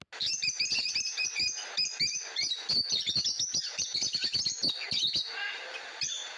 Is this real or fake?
real